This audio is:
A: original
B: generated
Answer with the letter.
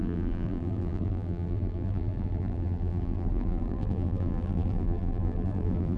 B